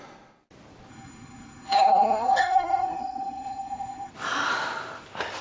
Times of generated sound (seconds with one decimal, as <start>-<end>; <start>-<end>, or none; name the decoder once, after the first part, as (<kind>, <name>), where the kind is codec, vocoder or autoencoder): 0.9-4.1 (codec, SNAC)